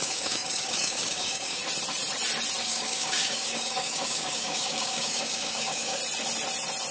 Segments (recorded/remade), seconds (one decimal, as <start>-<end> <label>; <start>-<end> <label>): 0.0-1.6 remade; 1.6-2.6 recorded; 2.6-6.0 remade; 6.0-6.9 recorded